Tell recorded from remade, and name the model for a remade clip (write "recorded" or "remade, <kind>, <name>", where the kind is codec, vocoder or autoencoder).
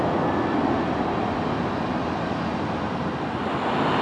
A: recorded